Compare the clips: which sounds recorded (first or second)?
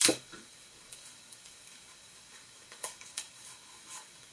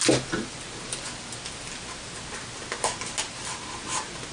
second